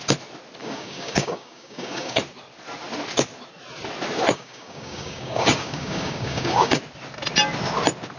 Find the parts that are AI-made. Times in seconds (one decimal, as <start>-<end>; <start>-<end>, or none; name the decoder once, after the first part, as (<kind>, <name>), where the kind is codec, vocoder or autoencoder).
0.6-2.2 (codec, DAC); 4.3-6.8